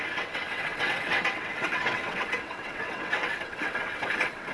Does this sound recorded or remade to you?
remade